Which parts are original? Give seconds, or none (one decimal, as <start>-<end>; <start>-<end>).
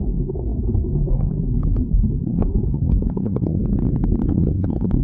3.6-4.3